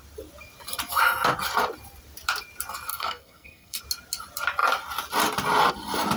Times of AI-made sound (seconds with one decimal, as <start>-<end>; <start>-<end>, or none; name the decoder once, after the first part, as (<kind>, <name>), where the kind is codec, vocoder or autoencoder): 2.9-3.8 (codec, SNAC)